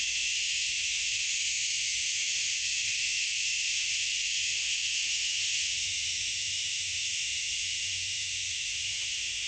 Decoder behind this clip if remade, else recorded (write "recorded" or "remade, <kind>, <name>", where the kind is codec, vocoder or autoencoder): remade, autoencoder, DAC-VAE